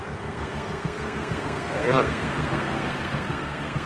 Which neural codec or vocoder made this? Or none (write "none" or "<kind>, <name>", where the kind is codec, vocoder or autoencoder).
codec, SNAC